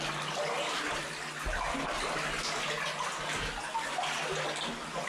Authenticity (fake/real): real